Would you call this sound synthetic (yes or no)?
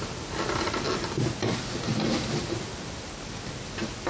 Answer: no